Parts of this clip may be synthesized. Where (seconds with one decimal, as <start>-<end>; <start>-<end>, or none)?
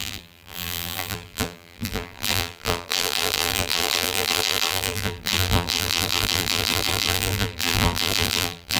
0.0-8.8